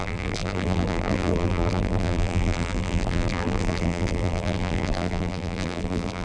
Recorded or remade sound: remade